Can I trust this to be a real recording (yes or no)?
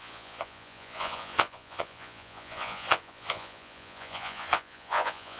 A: no